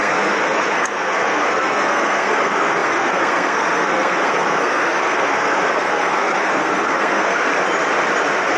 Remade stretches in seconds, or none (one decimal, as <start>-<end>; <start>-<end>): 0.0-7.5

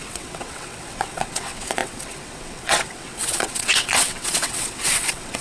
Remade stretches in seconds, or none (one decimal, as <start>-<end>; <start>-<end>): 0.0-5.4

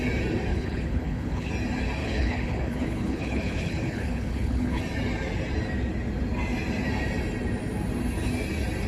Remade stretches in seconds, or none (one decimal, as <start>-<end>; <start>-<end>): 0.5-1.5; 2.0-4.8

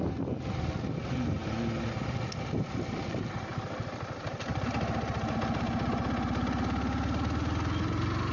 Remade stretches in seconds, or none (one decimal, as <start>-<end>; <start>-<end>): none

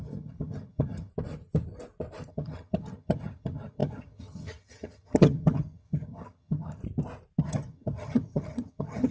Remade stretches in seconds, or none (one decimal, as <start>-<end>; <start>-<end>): 0.0-1.1; 2.3-6.8; 7.4-9.1

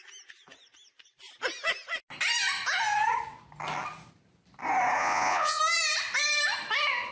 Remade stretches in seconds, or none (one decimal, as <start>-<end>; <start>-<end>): 5.0-5.6

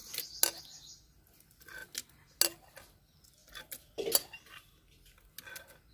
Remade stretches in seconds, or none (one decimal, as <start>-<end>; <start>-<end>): none

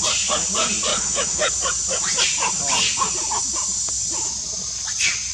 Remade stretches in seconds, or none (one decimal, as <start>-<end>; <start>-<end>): 0.9-1.5